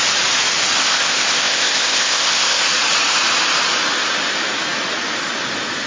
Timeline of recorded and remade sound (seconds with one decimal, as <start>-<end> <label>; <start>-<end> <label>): 0.0-0.8 recorded; 0.8-2.6 remade; 2.6-5.9 recorded